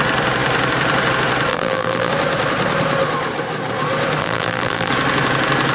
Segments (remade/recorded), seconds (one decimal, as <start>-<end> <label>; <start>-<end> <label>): 0.0-1.5 recorded; 1.5-2.1 remade; 2.1-4.2 recorded; 4.2-4.9 remade; 4.9-5.7 recorded

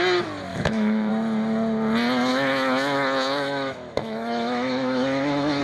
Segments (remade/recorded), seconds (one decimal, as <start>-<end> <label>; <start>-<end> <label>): 0.0-0.5 recorded; 0.5-1.1 remade; 1.1-2.3 recorded; 2.3-5.6 remade

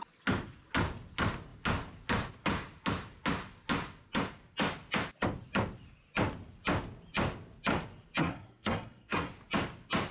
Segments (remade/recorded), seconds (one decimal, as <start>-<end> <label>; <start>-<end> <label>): 0.0-8.2 recorded; 8.2-9.3 remade; 9.3-10.1 recorded

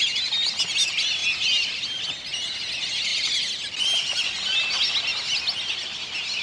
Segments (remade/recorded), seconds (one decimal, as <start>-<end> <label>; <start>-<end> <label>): 0.0-1.2 recorded; 1.2-2.0 remade; 2.0-6.4 recorded

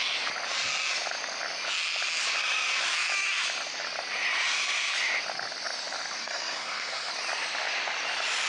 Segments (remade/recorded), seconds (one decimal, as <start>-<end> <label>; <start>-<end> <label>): 0.0-6.2 recorded; 6.2-7.1 remade; 7.1-8.5 recorded

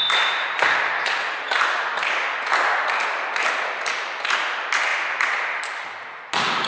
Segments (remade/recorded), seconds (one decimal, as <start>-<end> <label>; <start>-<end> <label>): 0.0-6.7 recorded

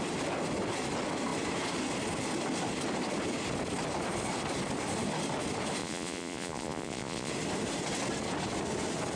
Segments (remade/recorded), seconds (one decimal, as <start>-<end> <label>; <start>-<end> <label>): 0.0-5.8 recorded; 5.8-7.3 remade; 7.3-9.2 recorded